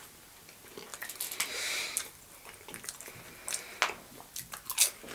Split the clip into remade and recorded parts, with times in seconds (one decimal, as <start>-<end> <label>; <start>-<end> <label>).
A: 0.0-5.1 recorded